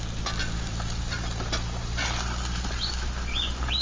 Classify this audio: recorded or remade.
recorded